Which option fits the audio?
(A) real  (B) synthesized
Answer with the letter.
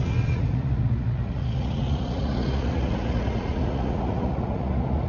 B